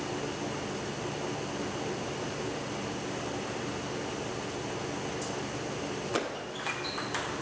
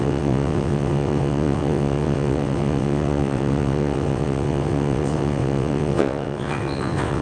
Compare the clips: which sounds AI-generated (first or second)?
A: second